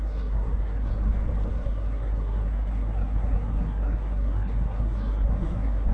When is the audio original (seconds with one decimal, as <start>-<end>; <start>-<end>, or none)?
0.9-1.5